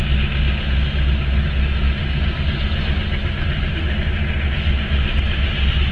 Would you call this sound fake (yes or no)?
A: no